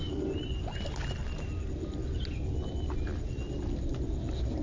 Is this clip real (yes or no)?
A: yes